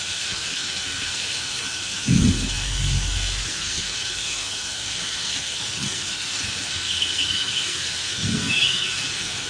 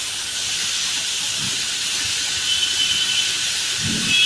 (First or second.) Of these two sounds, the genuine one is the second